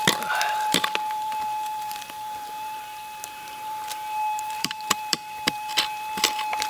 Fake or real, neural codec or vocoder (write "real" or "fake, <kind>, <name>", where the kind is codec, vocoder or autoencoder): fake, vocoder, BigVGAN v2